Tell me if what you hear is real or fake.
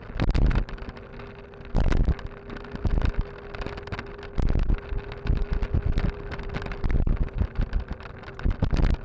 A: real